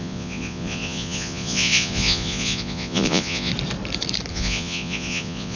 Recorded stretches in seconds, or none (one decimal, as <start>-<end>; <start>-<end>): 3.5-4.3